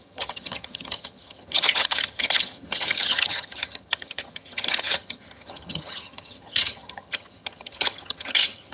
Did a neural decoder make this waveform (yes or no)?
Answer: yes